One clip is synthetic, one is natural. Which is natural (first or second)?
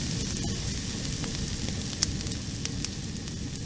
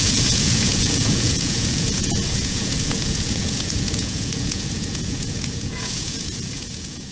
first